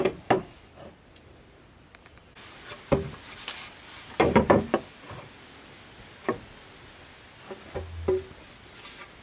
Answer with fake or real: real